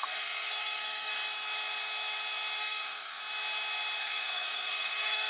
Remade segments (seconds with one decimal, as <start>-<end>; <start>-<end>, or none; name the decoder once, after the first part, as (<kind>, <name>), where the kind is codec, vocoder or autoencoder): 0.0-1.1 (codec, SNAC); 2.6-3.2; 4.0-5.3